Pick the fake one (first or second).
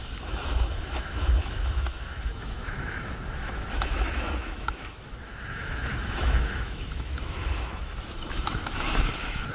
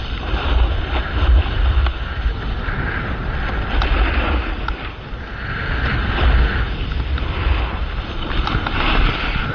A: first